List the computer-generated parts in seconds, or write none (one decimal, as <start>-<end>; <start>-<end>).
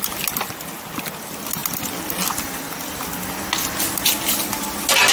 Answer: none